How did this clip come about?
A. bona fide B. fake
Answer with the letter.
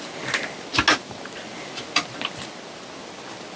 A